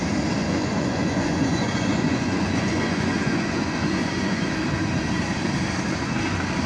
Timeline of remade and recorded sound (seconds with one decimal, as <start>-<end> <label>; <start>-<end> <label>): 0.0-0.4 recorded; 0.4-4.4 remade; 4.4-6.7 recorded